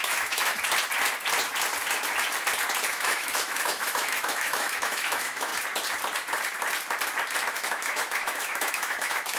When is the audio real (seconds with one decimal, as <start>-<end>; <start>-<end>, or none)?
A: 0.5-2.9; 5.5-7.5